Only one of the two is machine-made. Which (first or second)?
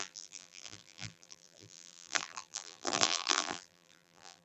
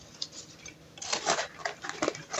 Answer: first